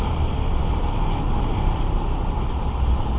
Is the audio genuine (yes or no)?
yes